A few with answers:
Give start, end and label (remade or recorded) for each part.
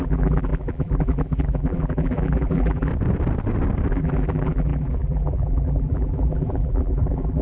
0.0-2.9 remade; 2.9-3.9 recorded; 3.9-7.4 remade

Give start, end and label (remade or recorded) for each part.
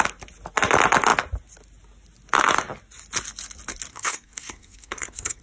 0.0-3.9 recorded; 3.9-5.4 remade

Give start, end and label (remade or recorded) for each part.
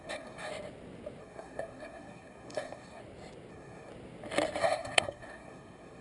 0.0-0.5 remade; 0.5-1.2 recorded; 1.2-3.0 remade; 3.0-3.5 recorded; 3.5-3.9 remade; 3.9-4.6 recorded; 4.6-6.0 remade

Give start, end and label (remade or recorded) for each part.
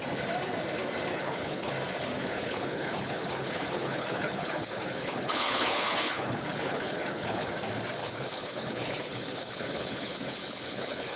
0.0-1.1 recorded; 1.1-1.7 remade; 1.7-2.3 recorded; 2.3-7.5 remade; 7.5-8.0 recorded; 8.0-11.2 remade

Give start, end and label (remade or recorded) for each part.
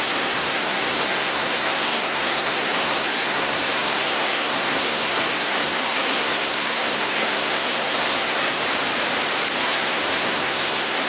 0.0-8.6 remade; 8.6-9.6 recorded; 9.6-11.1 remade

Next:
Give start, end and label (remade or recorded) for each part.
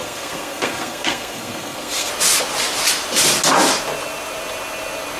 0.0-2.1 remade; 2.1-5.2 recorded